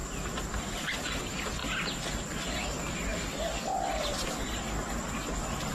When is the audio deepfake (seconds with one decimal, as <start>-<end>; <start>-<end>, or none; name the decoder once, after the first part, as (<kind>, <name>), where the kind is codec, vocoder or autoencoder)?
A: 0.5-1.6 (vocoder, BigVGAN v2); 2.4-3.1